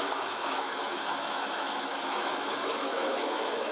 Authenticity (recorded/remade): remade